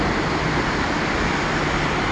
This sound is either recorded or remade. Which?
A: remade